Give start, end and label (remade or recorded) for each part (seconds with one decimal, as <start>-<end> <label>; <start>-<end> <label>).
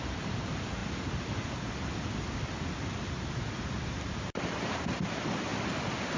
0.0-0.8 remade; 0.8-3.5 recorded; 3.5-5.5 remade; 5.5-6.2 recorded